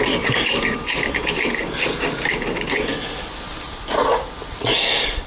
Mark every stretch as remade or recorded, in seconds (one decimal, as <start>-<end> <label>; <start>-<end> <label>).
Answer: 0.0-2.9 remade; 2.9-3.5 recorded; 3.5-5.3 remade